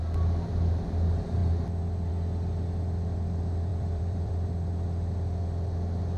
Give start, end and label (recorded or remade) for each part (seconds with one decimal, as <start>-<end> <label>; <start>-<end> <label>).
0.0-3.7 recorded; 3.7-4.5 remade; 4.5-6.2 recorded